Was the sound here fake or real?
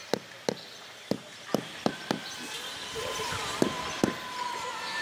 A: real